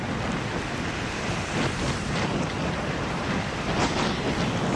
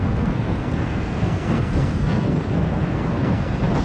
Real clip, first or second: first